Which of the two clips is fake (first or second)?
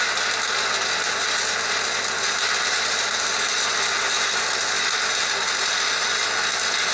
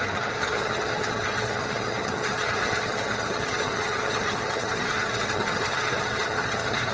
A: second